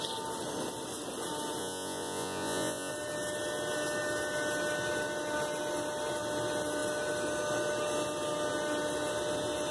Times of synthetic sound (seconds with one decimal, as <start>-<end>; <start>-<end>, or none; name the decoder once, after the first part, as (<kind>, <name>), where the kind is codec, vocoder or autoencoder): 1.6-2.9 (vocoder, Vocos)